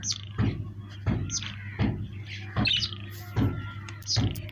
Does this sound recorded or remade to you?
recorded